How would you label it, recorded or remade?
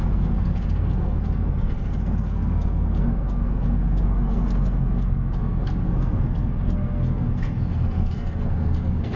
remade